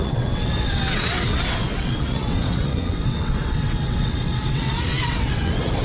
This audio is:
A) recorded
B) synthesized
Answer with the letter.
B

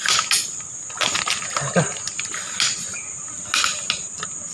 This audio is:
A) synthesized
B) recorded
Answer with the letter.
B